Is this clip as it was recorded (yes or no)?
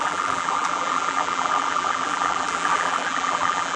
no